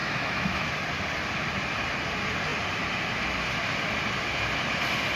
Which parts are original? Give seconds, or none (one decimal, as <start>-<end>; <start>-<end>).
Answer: 0.7-5.2